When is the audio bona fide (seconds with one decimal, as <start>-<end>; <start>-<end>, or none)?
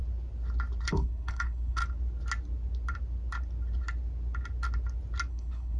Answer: 0.0-0.8; 1.8-5.3